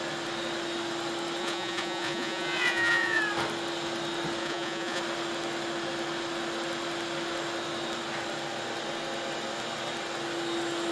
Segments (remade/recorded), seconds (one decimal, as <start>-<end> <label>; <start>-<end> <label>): 0.0-1.4 recorded; 1.4-3.2 remade; 3.2-4.4 recorded; 4.4-5.0 remade; 5.0-10.9 recorded

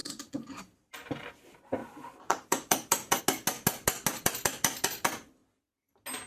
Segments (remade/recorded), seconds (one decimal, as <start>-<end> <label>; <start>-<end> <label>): 0.0-1.3 remade; 1.3-1.8 recorded; 1.8-3.2 remade; 3.2-6.3 recorded

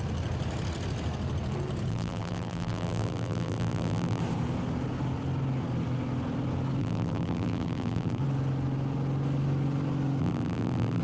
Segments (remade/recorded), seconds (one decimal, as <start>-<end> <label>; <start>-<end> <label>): 0.0-1.9 recorded; 1.9-4.2 remade; 4.2-6.8 recorded; 6.8-8.2 remade; 8.2-10.2 recorded; 10.2-11.0 remade

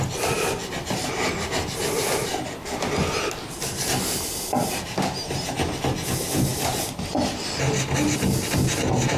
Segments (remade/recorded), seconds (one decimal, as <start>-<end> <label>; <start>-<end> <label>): 0.0-9.2 recorded

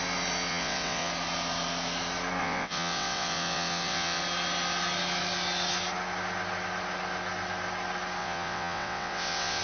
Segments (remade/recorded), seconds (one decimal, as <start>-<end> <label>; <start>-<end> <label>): 0.0-0.5 recorded; 0.5-1.1 remade; 1.1-2.4 recorded; 2.4-4.2 remade; 4.2-8.2 recorded; 8.2-9.6 remade

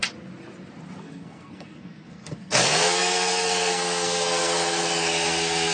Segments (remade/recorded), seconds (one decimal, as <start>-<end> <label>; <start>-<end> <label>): 0.0-1.0 recorded; 1.0-5.7 remade

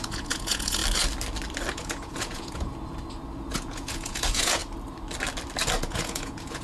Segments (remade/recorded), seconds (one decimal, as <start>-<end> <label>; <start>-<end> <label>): 0.0-0.8 remade; 0.8-1.7 recorded; 1.7-2.7 remade; 2.7-3.5 recorded; 3.5-4.6 remade; 4.6-5.8 recorded; 5.8-6.6 remade

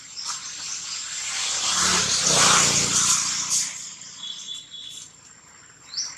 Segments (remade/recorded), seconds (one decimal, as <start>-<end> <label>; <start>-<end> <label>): 0.0-6.2 recorded